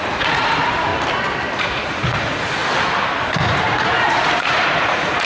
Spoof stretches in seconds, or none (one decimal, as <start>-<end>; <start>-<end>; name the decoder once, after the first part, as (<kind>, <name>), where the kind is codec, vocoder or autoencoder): 0.0-0.9 (vocoder, Vocos); 1.6-2.6; 3.4-5.2